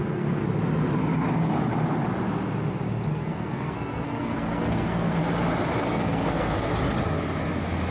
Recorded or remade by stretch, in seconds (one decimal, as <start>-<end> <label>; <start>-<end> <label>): 0.0-0.4 remade; 0.4-3.1 recorded; 3.1-5.2 remade; 5.2-5.8 recorded; 5.8-6.7 remade; 6.7-7.9 recorded